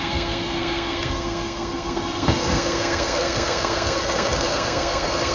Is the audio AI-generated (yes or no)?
yes